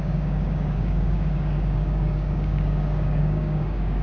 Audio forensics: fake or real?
fake